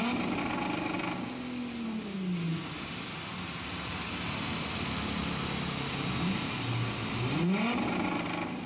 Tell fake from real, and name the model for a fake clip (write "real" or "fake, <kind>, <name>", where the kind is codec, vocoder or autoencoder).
real